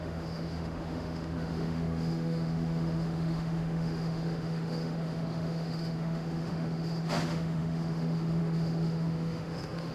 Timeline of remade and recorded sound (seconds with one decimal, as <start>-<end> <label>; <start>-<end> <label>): 0.0-9.9 remade